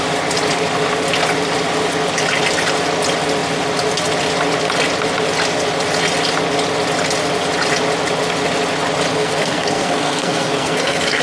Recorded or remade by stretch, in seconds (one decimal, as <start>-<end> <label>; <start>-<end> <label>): 0.0-9.1 recorded; 9.1-11.2 remade